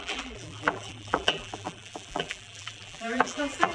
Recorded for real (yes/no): no